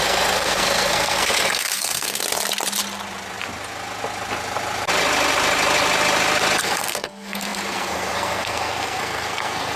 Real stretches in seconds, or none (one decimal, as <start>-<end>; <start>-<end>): 2.2-6.6